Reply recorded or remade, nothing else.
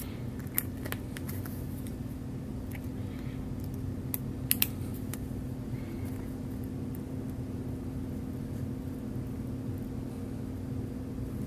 recorded